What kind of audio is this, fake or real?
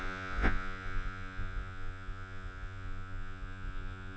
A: fake